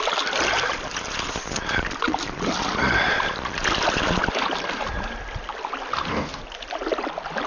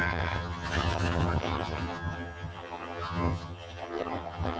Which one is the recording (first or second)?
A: first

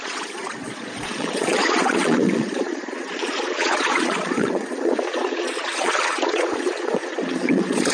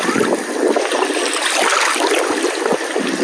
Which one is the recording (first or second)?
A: second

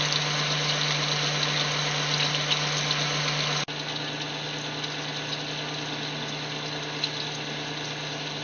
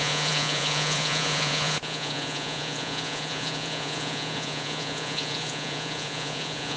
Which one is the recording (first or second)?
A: first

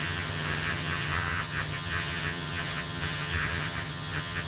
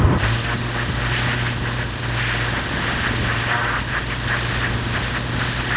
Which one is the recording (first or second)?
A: second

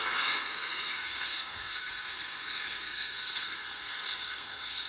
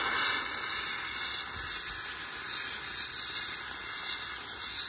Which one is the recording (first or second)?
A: second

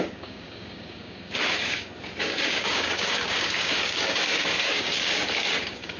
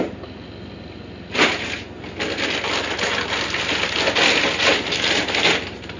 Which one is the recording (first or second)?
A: second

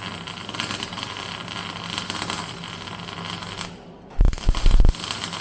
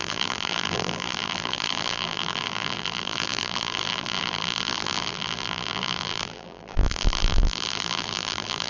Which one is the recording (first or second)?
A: first